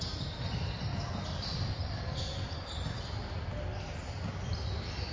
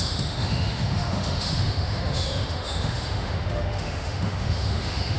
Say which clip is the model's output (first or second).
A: second